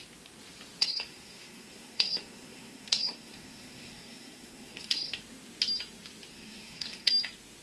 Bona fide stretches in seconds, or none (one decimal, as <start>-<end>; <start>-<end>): 0.0-0.8; 5.2-6.3; 7.1-7.6